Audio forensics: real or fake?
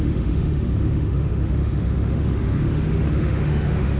fake